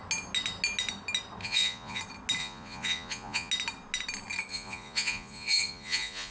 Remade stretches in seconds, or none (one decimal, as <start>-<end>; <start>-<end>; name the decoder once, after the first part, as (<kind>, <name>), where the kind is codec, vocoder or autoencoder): 1.4-2.0 (vocoder, Vocos); 2.4-3.5; 4.5-6.3